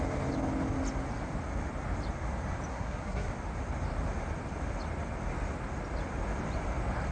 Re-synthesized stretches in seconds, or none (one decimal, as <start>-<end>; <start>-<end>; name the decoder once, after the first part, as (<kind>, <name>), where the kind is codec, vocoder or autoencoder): 2.7-3.3 (codec, SNAC)